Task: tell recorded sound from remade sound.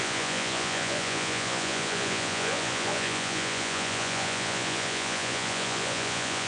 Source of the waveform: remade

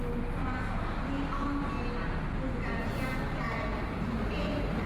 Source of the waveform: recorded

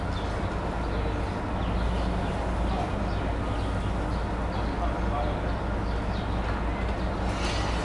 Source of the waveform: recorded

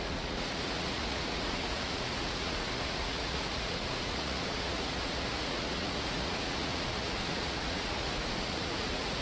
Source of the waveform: remade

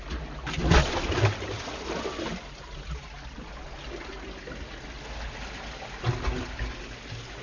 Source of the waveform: recorded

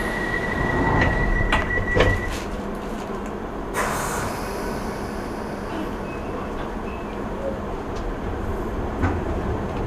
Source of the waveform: recorded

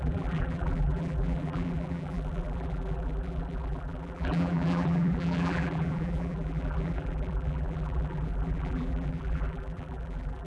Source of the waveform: remade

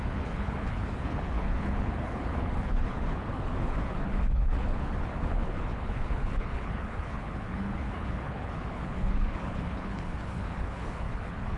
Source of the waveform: remade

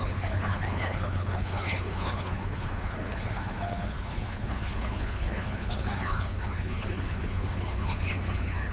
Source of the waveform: remade